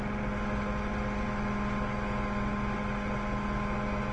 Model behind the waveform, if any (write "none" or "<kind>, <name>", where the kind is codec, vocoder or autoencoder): none